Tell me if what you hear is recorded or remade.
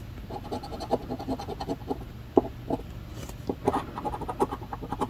recorded